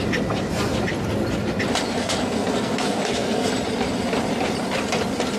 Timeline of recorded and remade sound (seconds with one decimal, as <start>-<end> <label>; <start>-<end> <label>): 0.0-2.0 recorded; 2.0-3.5 remade; 3.5-5.4 recorded